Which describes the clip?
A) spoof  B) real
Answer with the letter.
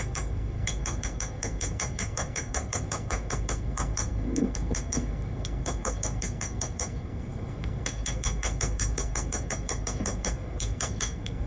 A